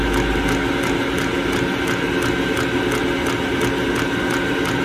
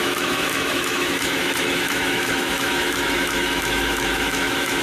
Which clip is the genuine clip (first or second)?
first